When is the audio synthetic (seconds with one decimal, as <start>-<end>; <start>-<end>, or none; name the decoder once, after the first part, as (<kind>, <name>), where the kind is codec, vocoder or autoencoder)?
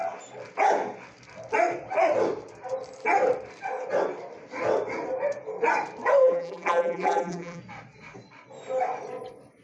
6.2-7.6 (vocoder, BigVGAN v2)